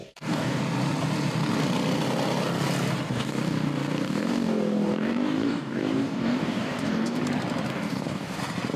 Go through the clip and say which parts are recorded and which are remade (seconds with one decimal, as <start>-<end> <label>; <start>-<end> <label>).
0.0-0.6 remade; 0.6-3.1 recorded; 3.1-7.2 remade; 7.2-7.7 recorded; 7.7-8.4 remade; 8.4-8.8 recorded